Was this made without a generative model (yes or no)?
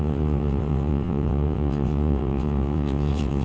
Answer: no